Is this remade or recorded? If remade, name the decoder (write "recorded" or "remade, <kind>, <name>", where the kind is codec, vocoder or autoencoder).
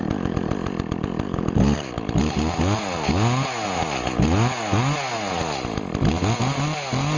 recorded